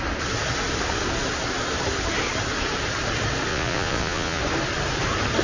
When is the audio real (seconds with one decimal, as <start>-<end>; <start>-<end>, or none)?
0.0-3.5; 4.4-5.4